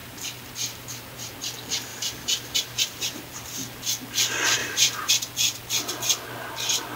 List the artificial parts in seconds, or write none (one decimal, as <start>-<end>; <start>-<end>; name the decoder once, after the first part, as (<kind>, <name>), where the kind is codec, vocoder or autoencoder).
0.0-1.4 (vocoder, BigVGAN v2); 1.9-3.8; 4.6-5.1